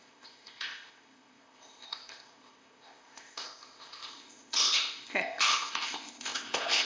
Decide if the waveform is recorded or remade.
remade